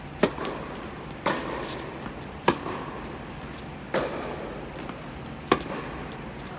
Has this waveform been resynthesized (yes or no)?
no